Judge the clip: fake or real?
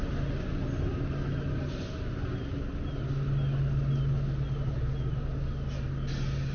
real